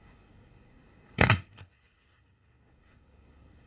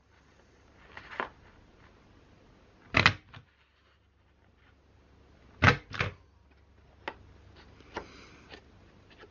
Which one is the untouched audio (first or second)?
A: second